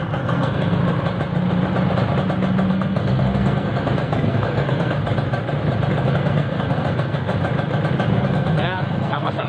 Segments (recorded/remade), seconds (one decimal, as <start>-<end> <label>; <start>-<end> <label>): 0.0-0.8 remade; 0.8-2.7 recorded; 2.7-5.0 remade; 5.0-6.0 recorded; 6.0-7.3 remade; 7.3-8.1 recorded; 8.1-9.5 remade